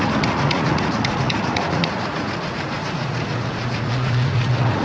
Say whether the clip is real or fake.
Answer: fake